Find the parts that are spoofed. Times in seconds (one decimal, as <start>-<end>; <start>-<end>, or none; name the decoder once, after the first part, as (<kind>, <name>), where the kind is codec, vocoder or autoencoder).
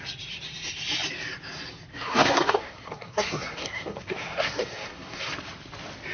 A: 1.9-5.3 (codec, SNAC)